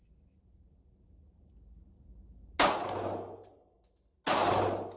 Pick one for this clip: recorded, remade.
recorded